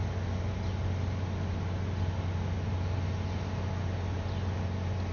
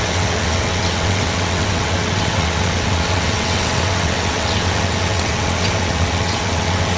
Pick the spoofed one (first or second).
second